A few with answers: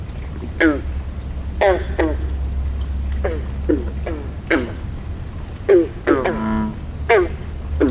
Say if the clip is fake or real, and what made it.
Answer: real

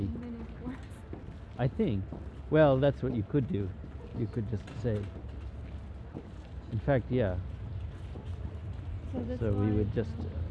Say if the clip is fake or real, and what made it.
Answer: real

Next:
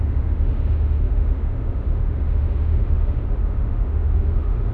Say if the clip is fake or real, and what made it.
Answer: fake, autoencoder, DAC-VAE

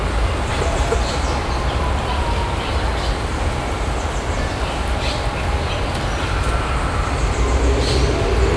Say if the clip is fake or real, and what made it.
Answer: real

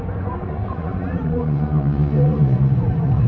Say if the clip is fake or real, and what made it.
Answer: fake, vocoder, Vocos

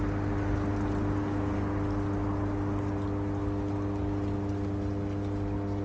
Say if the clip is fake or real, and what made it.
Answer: real